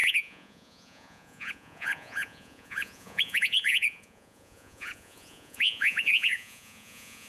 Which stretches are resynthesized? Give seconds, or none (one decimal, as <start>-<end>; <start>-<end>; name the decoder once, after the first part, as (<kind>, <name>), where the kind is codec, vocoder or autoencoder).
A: 0.0-7.3 (vocoder, Vocos)